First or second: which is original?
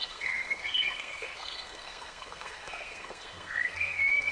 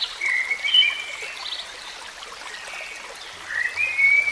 second